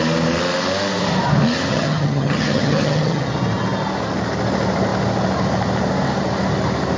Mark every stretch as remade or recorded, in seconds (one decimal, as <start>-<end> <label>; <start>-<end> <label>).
0.0-1.7 recorded; 1.7-3.2 remade; 3.2-7.0 recorded